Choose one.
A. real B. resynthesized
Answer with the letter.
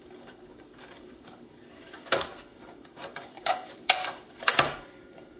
B